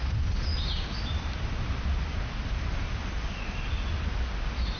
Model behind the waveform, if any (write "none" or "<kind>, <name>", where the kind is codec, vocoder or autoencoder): none